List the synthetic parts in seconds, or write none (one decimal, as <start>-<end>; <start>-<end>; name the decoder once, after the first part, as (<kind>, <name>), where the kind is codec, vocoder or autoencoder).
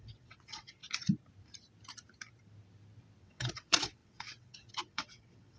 0.0-0.8 (vocoder, WaveNeXt); 3.2-5.6